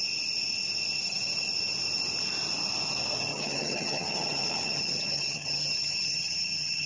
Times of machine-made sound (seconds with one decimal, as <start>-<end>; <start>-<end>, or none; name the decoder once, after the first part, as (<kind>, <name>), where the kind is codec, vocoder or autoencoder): 3.3-6.9 (vocoder, HiFi-GAN)